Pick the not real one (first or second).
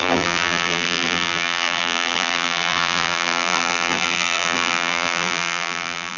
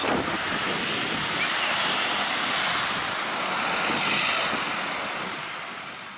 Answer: first